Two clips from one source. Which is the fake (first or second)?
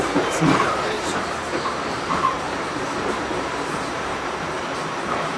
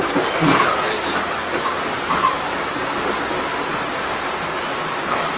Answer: first